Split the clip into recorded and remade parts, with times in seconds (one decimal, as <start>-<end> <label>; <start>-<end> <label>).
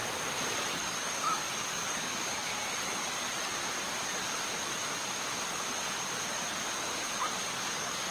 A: 0.0-0.7 recorded; 0.7-2.5 remade; 2.5-7.4 recorded; 7.4-8.1 remade